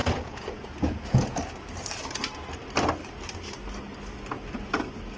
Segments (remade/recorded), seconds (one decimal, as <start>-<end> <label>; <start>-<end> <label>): 0.0-1.4 remade; 1.4-5.2 recorded